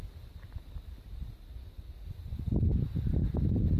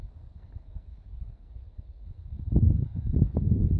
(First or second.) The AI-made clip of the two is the second